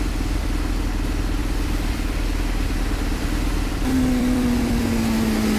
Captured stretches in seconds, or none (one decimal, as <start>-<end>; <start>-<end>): 0.0-1.4; 4.8-5.6